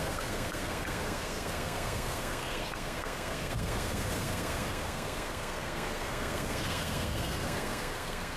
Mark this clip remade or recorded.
remade